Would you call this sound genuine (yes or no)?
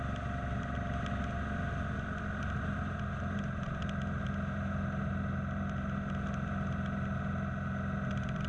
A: yes